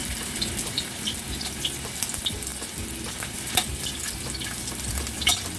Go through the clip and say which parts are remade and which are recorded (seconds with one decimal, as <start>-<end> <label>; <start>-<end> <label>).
0.0-5.6 recorded